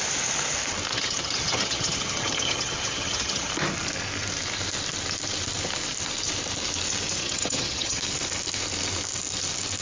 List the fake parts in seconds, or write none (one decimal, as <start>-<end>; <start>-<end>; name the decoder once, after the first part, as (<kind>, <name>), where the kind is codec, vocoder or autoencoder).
0.9-3.5 (vocoder, HiFi-GAN); 7.2-8.0